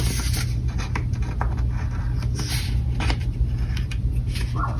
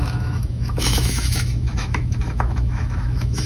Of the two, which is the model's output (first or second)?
second